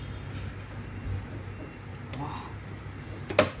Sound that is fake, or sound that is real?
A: real